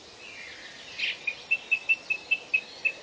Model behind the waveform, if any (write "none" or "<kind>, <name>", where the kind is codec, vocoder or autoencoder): none